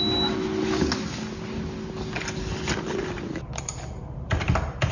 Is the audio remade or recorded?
recorded